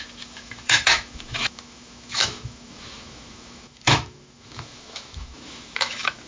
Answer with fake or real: fake